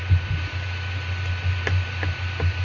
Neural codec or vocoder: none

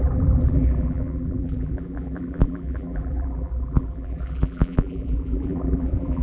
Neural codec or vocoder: vocoder, BigVGAN v2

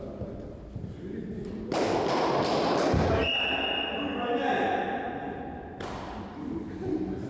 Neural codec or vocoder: none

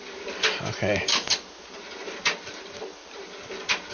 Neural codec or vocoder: none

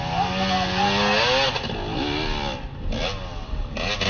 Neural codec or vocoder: none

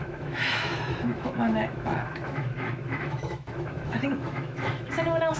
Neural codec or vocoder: autoencoder, DAC-VAE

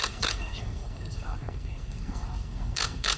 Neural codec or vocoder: codec, SNAC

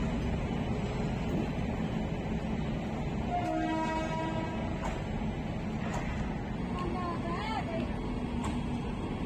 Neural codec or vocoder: none